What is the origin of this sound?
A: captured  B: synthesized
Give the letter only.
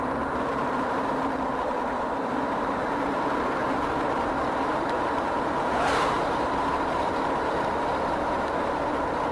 B